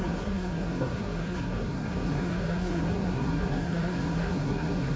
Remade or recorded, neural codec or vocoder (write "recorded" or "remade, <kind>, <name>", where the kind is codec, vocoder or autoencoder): remade, codec, SNAC